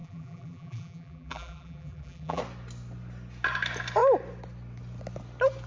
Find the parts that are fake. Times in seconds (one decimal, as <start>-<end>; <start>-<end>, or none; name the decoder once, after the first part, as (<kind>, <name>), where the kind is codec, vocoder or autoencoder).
0.0-2.4 (vocoder, BigVGAN v2)